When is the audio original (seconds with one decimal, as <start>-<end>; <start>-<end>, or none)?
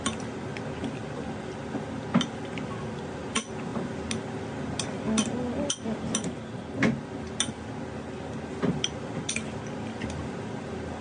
0.0-11.0